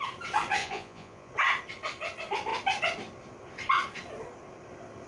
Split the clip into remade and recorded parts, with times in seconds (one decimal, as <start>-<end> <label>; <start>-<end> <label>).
0.0-0.6 recorded; 0.6-1.3 remade; 1.3-5.1 recorded